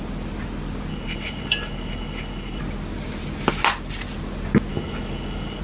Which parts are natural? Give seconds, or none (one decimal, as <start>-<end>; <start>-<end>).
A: 0.0-0.9; 2.6-4.7